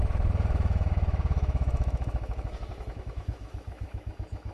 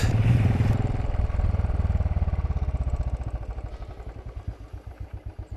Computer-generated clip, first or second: first